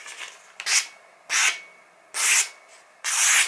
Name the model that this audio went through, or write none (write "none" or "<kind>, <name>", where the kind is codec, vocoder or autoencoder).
none